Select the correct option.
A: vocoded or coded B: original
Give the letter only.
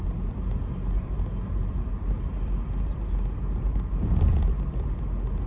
A